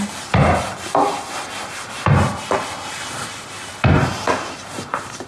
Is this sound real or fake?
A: real